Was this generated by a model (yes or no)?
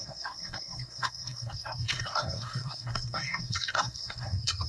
yes